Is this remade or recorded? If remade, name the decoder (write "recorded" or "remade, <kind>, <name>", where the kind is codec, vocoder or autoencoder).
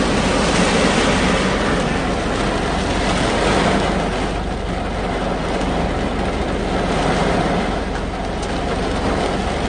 recorded